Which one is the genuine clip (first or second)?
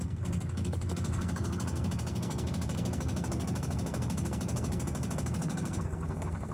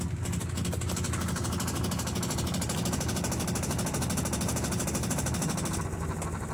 second